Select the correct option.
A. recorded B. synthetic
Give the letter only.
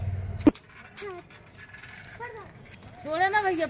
A